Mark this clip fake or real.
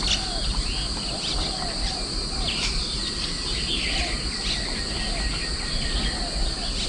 real